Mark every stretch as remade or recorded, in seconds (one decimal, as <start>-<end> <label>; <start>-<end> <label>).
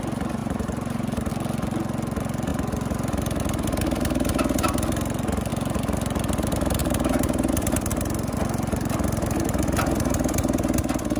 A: 0.0-0.4 recorded; 0.4-1.3 remade; 1.3-6.8 recorded; 6.8-7.5 remade; 7.5-11.2 recorded